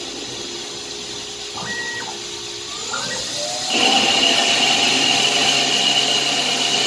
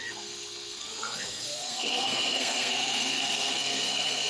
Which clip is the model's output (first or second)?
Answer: second